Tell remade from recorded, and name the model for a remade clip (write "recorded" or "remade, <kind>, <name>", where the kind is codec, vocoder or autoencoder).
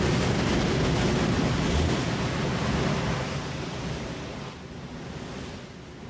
recorded